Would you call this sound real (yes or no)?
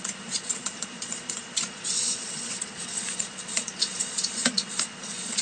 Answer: no